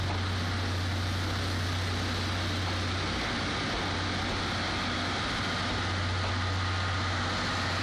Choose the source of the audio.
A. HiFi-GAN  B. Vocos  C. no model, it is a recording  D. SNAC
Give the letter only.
C